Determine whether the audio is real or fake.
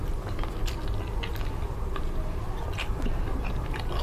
real